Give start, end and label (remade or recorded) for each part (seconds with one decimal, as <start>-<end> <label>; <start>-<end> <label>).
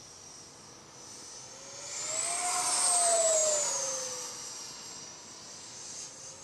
0.0-6.4 recorded